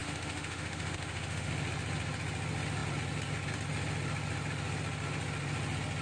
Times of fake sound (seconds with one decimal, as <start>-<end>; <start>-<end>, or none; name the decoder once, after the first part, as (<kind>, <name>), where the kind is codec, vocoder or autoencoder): 0.0-1.5 (autoencoder, DAC-VAE)